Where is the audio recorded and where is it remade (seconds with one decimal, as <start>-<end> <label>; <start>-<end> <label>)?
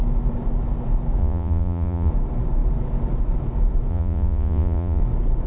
0.0-1.2 recorded; 1.2-2.1 remade; 2.1-3.9 recorded; 3.9-5.0 remade; 5.0-5.5 recorded